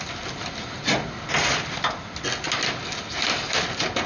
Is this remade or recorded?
recorded